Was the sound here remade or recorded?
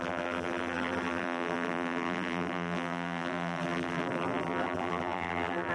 remade